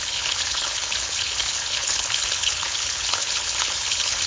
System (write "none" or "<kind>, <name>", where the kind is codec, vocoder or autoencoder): codec, HILCodec